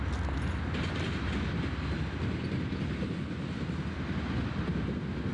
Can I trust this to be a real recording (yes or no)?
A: yes